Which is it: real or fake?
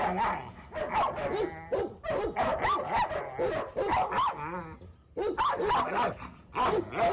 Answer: real